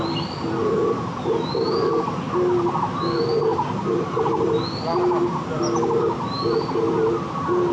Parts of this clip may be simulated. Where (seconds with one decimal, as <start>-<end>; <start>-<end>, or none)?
0.6-2.2; 3.5-4.5